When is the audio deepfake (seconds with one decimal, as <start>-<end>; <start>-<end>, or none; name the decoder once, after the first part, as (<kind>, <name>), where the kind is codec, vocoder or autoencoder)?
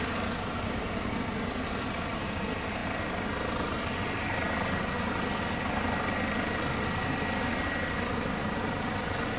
none